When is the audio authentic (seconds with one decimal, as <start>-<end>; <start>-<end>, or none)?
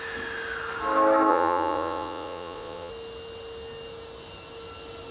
0.0-1.3; 2.9-5.1